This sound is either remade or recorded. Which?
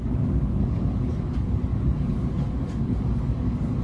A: remade